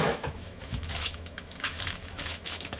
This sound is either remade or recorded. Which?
remade